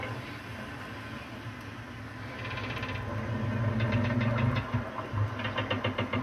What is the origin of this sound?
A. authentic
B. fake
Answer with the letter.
A